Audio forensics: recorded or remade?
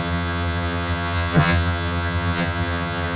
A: remade